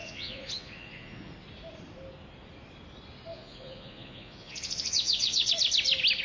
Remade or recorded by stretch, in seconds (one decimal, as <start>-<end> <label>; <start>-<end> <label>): 0.0-1.3 remade; 1.3-3.3 recorded; 3.3-5.5 remade; 5.5-6.2 recorded